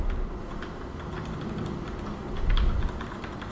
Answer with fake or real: real